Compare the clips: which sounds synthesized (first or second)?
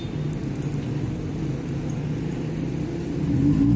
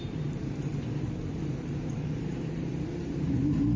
second